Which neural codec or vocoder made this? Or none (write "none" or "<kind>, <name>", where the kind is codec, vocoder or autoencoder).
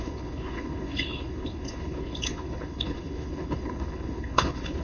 codec, HILCodec